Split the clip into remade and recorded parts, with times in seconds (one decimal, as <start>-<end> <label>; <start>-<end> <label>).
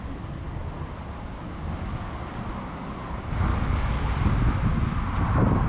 0.0-3.5 recorded; 3.5-4.1 remade; 4.1-5.7 recorded